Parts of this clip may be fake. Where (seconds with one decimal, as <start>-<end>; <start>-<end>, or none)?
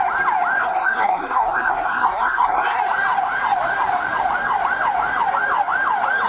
0.6-2.8